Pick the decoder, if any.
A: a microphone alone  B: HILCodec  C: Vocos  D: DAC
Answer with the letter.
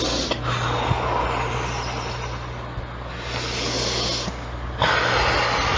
A